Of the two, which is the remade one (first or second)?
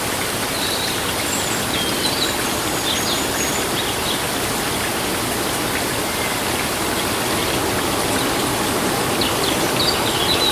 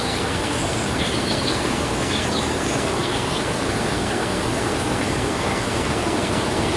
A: second